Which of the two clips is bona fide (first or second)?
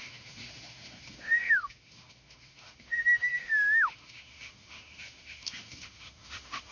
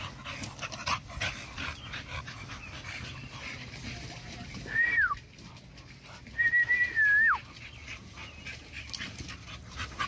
second